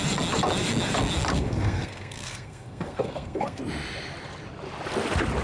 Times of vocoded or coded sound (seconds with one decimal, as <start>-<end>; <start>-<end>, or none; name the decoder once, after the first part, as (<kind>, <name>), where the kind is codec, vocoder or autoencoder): 1.3-3.6 (codec, SNAC)